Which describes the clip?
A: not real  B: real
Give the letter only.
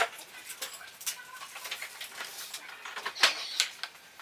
B